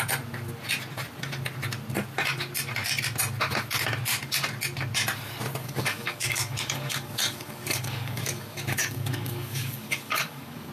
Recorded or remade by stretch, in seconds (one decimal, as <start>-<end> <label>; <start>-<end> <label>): 0.0-5.6 recorded; 5.6-10.7 remade